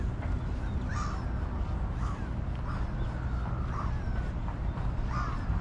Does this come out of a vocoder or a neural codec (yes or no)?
no